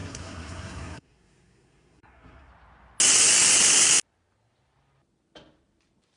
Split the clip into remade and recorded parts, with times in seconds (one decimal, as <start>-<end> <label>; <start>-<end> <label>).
0.0-2.5 remade; 2.5-6.2 recorded